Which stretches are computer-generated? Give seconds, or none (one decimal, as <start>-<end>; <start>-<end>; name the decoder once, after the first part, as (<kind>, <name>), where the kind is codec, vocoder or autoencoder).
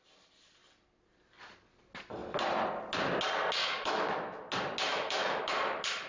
3.6-4.5 (autoencoder, DAC-VAE); 4.9-5.4